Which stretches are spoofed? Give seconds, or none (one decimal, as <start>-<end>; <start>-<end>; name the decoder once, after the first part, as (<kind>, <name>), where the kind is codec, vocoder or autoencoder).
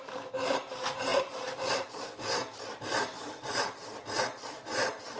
none